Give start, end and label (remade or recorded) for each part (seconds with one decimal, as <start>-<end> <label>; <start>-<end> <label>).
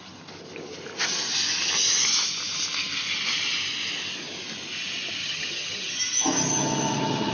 0.0-5.2 recorded; 5.2-6.0 remade; 6.0-6.5 recorded; 6.5-7.3 remade